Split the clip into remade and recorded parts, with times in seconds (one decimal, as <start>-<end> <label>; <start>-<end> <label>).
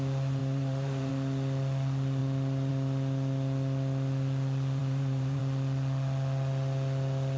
0.0-0.4 recorded; 0.4-1.1 remade; 1.1-4.8 recorded; 4.8-5.4 remade; 5.4-7.4 recorded